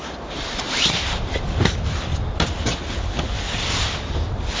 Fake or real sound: real